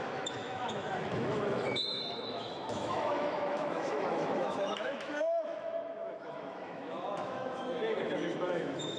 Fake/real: fake